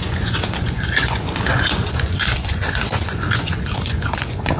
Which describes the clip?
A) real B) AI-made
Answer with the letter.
B